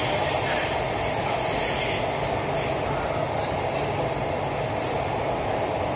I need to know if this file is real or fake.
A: real